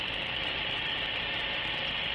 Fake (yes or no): no